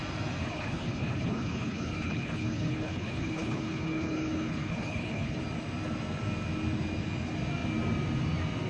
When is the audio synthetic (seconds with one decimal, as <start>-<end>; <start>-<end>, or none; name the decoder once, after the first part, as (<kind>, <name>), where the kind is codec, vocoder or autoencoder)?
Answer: 0.4-5.4 (codec, HILCodec)